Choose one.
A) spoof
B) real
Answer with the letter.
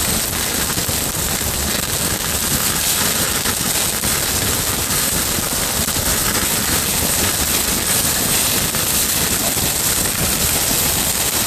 B